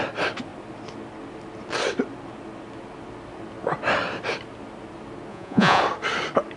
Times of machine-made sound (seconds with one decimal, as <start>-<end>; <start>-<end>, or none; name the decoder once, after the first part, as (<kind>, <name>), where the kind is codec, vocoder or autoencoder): 5.3-5.8 (vocoder, Vocos)